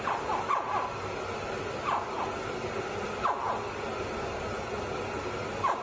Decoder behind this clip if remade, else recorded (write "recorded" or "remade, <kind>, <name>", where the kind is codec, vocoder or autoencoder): recorded